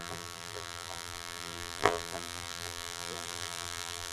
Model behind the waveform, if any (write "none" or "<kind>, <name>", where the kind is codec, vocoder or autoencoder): vocoder, BigVGAN v2